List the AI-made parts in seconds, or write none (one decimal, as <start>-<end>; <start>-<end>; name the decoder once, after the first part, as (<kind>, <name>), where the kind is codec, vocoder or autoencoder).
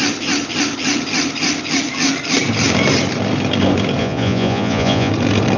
4.0-5.1 (vocoder, Vocos)